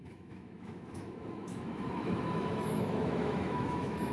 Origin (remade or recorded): remade